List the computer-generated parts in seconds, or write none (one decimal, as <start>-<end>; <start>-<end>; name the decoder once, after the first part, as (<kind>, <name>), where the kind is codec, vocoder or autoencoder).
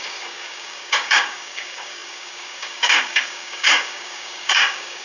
0.0-5.0 (codec, DAC)